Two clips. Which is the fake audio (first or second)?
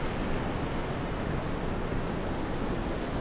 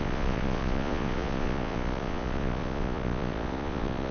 second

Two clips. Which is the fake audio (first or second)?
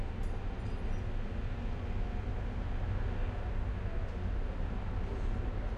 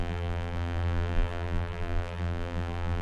second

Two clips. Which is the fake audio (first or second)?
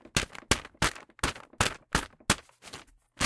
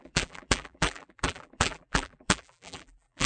second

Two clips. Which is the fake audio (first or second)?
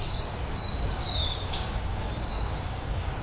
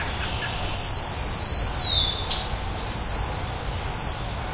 first